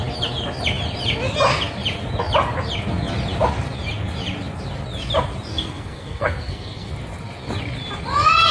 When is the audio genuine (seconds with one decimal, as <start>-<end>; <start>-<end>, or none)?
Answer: 0.0-5.5; 6.9-8.5